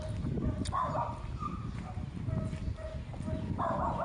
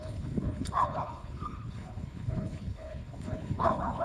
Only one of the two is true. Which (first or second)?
first